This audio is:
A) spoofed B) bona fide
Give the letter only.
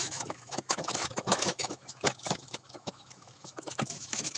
A